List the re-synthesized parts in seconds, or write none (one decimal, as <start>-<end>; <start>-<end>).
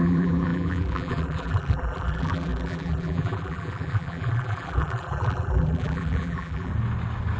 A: 0.0-6.7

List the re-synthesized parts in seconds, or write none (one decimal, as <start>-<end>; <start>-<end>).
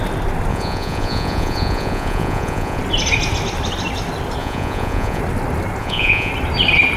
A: 0.5-2.8; 4.4-5.2; 5.8-6.3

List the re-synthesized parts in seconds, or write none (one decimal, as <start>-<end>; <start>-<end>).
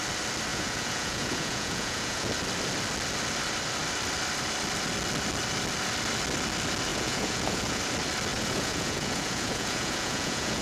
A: 0.5-2.3; 6.9-7.8; 8.3-10.6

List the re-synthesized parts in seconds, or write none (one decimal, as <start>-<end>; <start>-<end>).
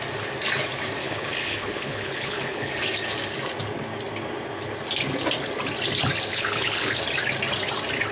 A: 1.0-2.7; 6.3-7.0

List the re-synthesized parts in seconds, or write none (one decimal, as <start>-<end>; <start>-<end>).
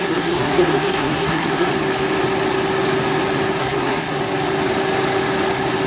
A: 0.0-1.7; 3.6-4.2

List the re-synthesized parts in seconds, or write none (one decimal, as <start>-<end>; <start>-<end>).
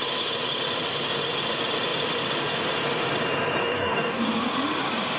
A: 3.6-4.2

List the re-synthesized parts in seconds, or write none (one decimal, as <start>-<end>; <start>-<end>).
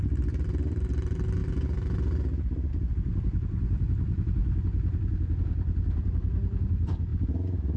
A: 0.0-1.4; 2.7-4.4; 5.4-7.1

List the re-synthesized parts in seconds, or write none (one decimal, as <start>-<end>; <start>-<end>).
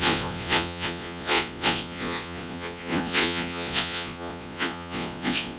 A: 0.0-5.6